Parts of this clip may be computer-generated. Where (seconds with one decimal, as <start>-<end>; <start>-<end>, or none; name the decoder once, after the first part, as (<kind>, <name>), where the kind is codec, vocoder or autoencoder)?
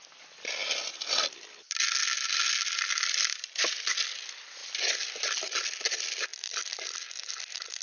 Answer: none